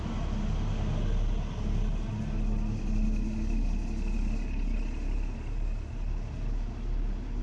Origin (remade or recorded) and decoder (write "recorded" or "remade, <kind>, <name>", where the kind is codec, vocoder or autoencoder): recorded